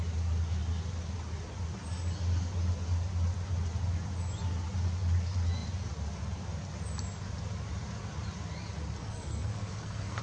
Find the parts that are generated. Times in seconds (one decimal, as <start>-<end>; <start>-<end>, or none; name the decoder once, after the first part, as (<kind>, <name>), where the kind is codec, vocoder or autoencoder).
9.0-10.2 (codec, SNAC)